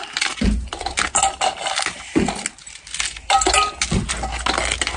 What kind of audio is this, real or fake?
real